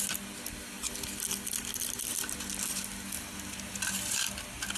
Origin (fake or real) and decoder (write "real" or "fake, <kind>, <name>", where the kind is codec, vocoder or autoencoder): real